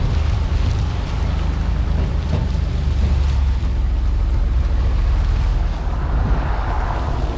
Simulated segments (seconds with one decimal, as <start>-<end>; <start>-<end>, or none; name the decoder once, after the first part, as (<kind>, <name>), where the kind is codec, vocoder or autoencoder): 5.5-6.8 (codec, DAC)